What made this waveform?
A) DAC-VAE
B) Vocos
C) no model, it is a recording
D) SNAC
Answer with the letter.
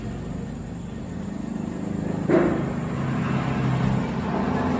C